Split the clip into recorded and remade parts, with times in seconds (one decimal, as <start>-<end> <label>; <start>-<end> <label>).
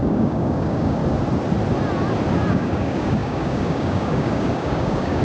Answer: 0.0-1.0 remade; 1.0-2.5 recorded; 2.5-5.2 remade